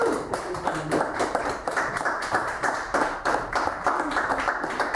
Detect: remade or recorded remade